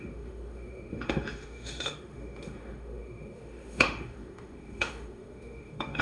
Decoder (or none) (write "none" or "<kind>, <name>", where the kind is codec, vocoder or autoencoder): autoencoder, DAC-VAE